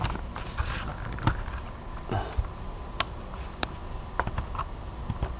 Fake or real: real